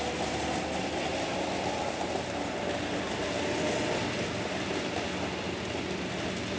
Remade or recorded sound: recorded